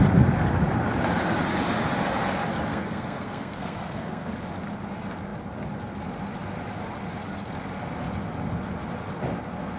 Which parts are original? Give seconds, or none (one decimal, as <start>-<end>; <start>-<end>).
0.0-2.7; 4.3-9.8